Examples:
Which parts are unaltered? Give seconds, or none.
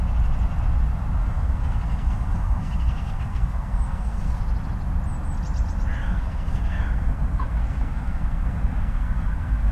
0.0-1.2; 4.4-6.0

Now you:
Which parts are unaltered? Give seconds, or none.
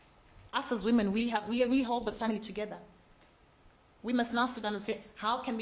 0.0-1.2; 2.3-4.3; 5.0-5.6